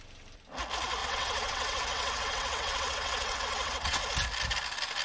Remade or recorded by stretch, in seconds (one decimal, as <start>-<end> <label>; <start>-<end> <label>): 0.0-1.0 recorded; 1.0-4.0 remade; 4.0-5.0 recorded